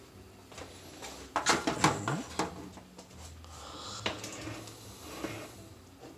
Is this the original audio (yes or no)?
yes